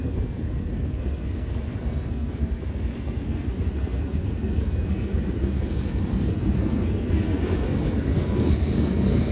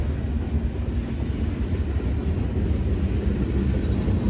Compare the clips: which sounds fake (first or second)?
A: first